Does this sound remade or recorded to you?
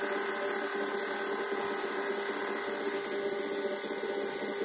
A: recorded